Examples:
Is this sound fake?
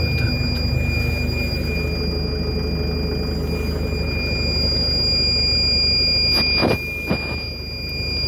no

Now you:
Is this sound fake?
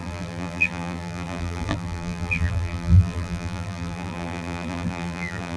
yes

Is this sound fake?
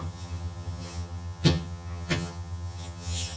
yes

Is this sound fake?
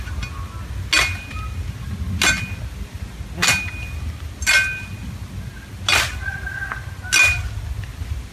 no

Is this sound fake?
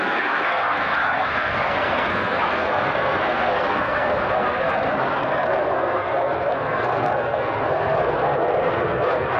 yes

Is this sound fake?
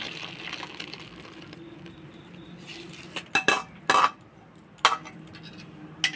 no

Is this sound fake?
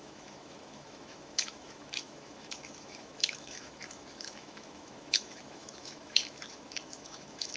yes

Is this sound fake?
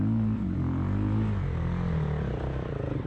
yes